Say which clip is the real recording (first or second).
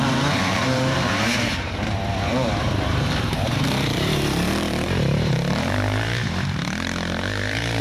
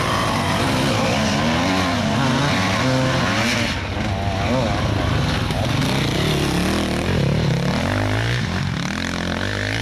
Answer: second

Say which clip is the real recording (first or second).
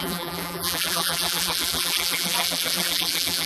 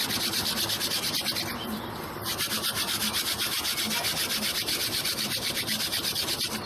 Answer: second